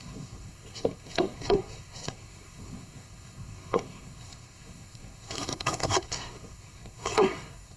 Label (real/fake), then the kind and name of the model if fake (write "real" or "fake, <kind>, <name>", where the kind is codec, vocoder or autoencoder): fake, codec, SNAC